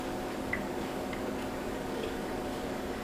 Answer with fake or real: fake